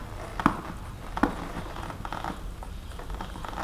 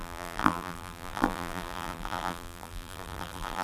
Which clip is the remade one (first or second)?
second